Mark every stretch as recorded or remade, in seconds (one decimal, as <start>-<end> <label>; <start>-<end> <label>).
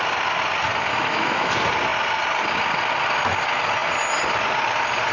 0.0-0.9 recorded; 0.9-1.5 remade; 1.5-5.1 recorded